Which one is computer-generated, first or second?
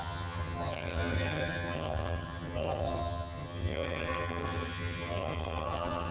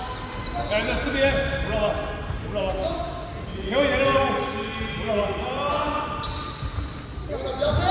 first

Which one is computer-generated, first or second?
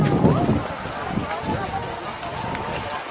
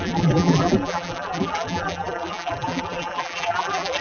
second